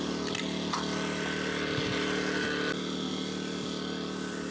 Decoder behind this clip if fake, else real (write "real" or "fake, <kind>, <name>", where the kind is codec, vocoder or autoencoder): real